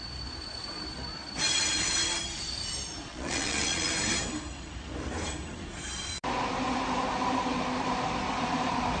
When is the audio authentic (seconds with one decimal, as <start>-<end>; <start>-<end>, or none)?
0.0-3.1; 3.9-9.0